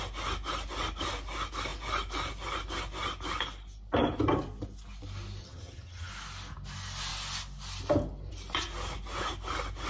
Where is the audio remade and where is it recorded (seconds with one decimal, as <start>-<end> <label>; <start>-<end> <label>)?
0.0-5.4 recorded; 5.4-6.1 remade; 6.1-9.9 recorded